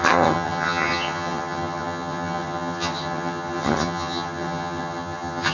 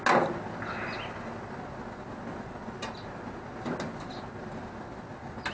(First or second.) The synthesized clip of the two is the first